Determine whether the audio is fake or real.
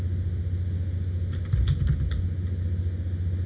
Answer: real